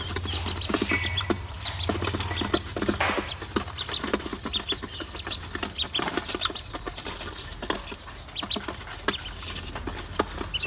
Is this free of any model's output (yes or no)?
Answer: yes